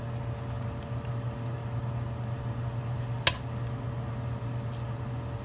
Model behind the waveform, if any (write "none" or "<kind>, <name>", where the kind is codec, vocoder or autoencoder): none